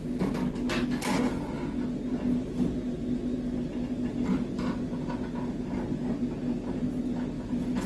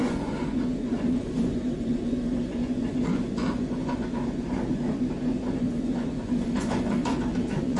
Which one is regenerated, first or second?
second